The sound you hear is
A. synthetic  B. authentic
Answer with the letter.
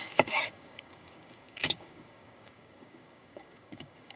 A